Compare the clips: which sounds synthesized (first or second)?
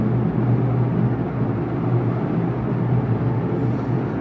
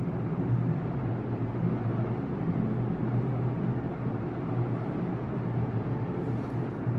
second